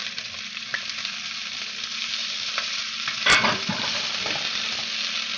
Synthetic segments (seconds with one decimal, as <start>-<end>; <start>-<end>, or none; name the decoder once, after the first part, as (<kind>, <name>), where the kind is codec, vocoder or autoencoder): 0.0-1.7 (vocoder, BigVGAN v2); 2.2-4.4